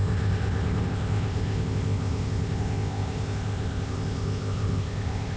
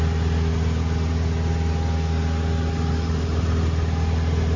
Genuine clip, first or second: second